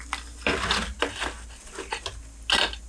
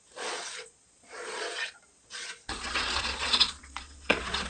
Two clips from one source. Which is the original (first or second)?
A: first